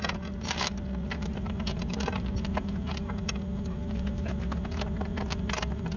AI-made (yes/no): yes